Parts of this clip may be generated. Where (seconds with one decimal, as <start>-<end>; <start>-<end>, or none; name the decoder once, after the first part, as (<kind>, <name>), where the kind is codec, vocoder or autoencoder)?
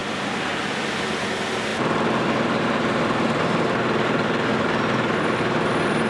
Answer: 0.0-0.6 (vocoder, BigVGAN v2); 1.7-5.4